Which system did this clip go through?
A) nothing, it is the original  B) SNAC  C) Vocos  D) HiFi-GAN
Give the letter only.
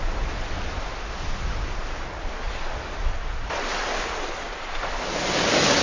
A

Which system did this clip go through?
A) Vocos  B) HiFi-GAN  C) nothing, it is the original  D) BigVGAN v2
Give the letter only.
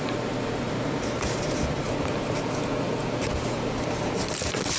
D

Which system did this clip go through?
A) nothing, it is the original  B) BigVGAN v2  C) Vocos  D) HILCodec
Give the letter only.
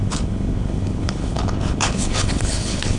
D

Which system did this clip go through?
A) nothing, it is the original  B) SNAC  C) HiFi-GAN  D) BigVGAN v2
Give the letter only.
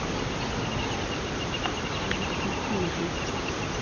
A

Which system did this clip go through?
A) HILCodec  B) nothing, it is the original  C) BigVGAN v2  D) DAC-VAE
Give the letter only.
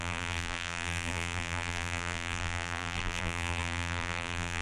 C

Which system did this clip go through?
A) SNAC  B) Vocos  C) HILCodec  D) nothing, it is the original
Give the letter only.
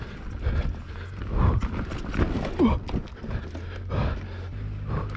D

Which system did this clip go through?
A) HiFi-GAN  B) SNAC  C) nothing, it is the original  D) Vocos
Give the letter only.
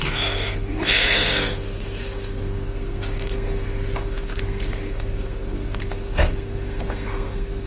B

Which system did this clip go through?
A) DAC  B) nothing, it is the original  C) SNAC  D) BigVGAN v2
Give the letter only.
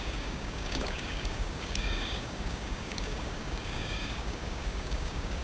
A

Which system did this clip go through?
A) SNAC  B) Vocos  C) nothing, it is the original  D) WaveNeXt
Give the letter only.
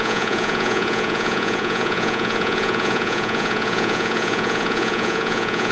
B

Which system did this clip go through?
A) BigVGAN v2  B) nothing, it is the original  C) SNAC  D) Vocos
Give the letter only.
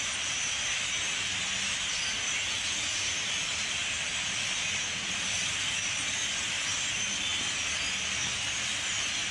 B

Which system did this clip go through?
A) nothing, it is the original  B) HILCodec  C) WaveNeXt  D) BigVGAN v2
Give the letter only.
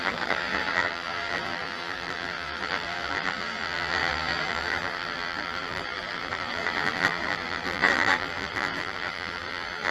D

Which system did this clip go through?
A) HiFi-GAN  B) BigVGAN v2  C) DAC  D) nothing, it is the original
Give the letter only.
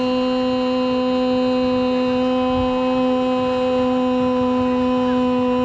D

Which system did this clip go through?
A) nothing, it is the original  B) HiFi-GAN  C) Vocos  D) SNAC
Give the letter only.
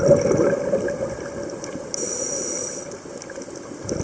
A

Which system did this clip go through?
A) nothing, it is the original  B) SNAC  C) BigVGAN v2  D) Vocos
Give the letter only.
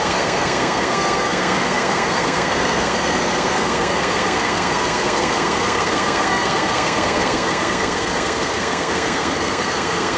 B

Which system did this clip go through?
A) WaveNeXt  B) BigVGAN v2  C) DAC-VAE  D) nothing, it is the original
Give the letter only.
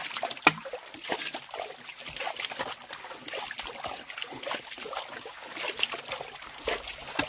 D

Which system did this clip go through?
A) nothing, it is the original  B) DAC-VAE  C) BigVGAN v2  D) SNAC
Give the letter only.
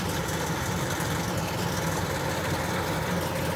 A